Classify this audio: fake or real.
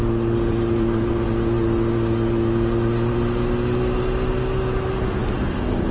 real